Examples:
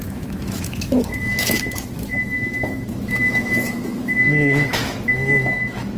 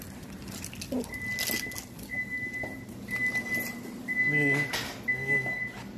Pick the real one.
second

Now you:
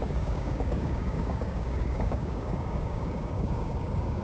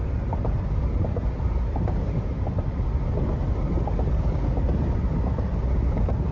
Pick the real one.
second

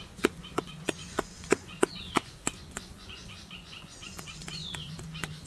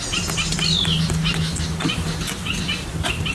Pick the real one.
second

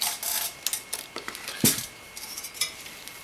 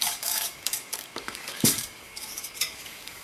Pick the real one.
first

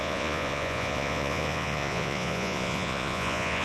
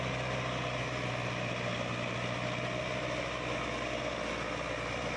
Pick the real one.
second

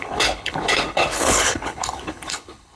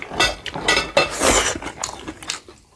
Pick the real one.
second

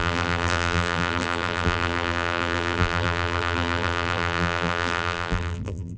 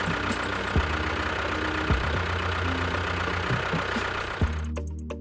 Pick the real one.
second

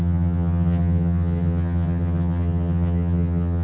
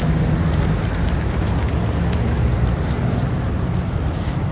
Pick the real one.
second